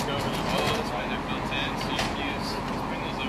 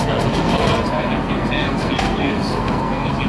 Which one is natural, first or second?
first